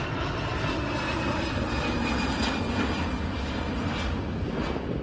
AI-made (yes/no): no